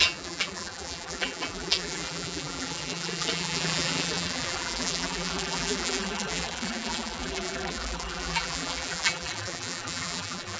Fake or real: fake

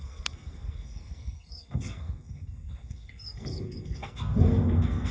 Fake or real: fake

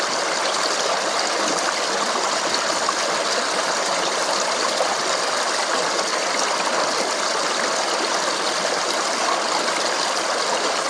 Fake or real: real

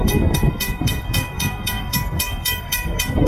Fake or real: fake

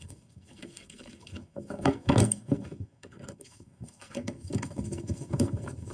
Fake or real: fake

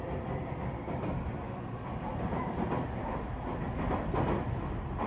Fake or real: real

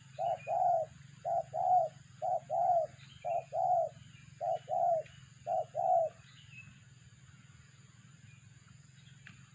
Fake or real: real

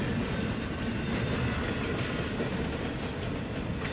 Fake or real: real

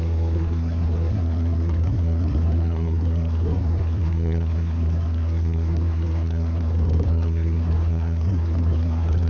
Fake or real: fake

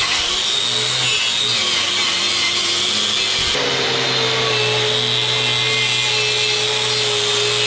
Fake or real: real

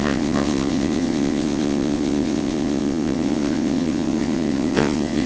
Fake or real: fake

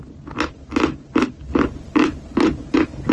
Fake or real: fake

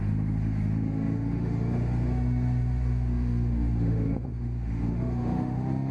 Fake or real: fake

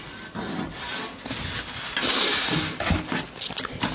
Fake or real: real